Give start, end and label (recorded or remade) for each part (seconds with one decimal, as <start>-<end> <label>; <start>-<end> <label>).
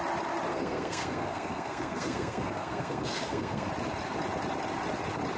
0.0-0.5 recorded; 0.5-3.7 remade; 3.7-5.4 recorded